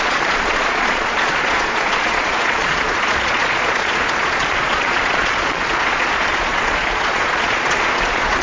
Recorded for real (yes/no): no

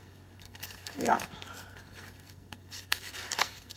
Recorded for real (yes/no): no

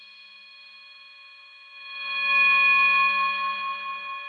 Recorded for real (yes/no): yes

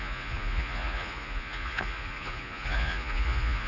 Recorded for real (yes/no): no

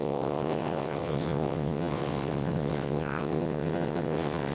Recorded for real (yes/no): no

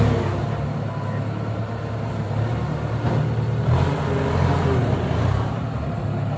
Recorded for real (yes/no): yes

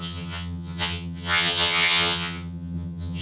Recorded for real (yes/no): no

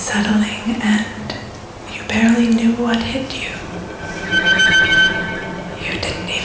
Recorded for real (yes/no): yes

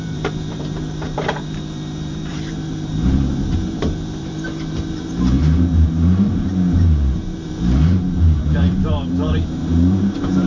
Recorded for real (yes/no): no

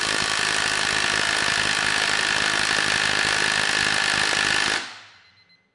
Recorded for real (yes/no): yes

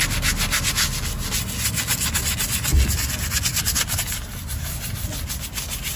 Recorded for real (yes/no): yes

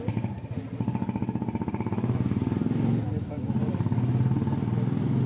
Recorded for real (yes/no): yes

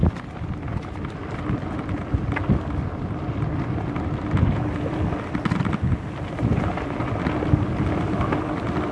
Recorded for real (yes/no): yes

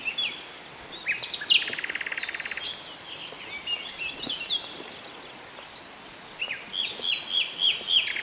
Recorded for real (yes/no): yes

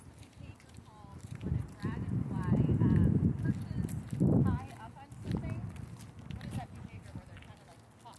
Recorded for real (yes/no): yes